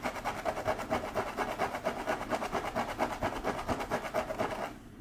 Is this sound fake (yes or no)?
no